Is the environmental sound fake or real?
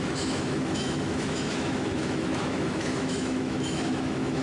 fake